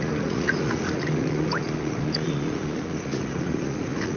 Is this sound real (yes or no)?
no